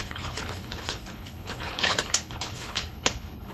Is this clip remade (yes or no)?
yes